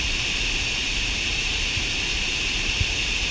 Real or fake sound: fake